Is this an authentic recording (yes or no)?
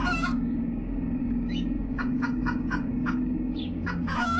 no